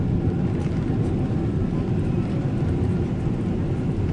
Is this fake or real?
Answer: real